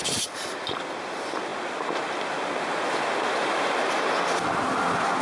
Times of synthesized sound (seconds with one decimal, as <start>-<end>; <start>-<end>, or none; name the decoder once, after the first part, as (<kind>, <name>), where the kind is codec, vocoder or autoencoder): none